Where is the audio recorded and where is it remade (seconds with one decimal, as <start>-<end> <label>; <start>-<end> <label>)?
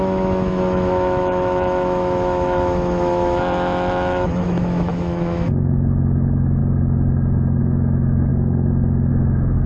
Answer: 0.0-6.6 remade; 6.6-7.6 recorded; 7.6-8.3 remade; 8.3-9.1 recorded; 9.1-9.7 remade